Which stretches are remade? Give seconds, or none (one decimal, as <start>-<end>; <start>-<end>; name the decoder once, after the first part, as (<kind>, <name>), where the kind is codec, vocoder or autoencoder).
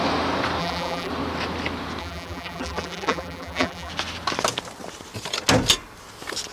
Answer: 0.6-1.1 (vocoder, BigVGAN v2); 2.0-3.9